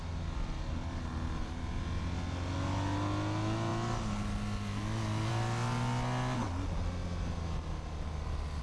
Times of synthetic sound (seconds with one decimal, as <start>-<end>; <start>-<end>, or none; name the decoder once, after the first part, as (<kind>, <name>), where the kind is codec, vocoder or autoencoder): none